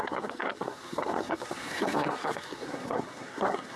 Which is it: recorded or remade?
remade